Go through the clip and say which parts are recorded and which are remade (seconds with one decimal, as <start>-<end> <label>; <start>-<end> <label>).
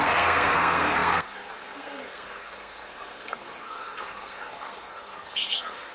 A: 0.0-5.9 remade